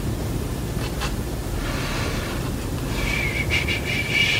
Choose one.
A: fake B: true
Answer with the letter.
B